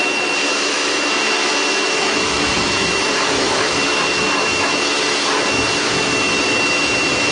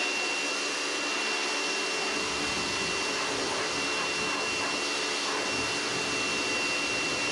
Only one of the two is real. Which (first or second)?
second